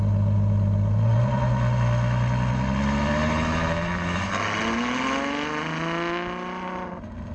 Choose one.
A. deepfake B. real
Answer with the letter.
B